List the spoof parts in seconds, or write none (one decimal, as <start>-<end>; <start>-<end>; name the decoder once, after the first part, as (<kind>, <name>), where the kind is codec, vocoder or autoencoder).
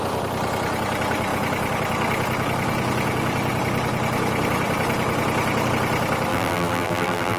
6.3-7.4 (vocoder, BigVGAN v2)